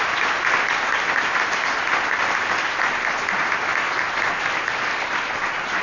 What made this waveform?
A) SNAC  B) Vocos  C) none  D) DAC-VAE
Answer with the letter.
C